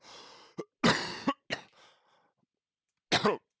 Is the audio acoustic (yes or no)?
yes